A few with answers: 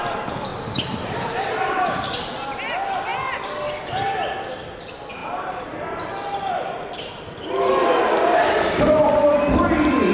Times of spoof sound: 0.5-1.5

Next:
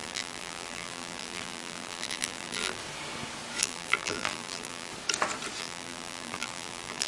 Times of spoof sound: 0.0-2.8; 3.6-4.9; 5.6-7.1

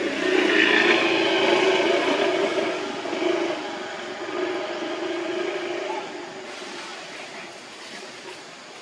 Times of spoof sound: 2.5-3.1; 6.9-8.8

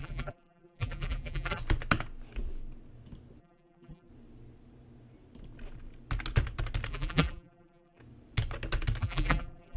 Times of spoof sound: 0.0-1.6; 3.4-4.1; 6.9-8.0; 9.0-9.8

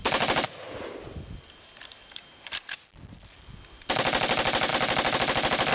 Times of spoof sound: none